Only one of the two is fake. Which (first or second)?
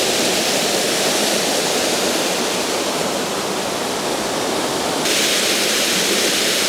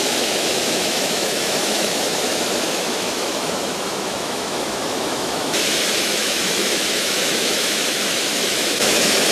second